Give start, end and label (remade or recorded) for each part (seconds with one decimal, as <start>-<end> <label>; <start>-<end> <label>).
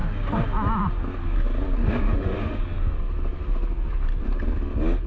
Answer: 0.0-1.8 recorded; 1.8-2.6 remade; 2.6-5.1 recorded